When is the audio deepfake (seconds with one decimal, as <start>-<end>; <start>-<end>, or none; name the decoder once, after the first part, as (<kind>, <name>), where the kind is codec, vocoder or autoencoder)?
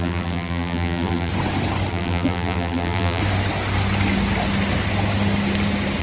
0.0-1.3 (vocoder, BigVGAN v2); 1.9-3.2